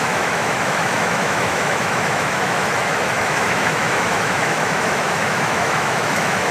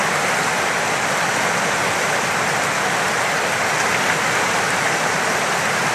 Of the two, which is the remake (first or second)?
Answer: first